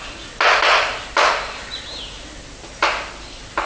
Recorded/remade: recorded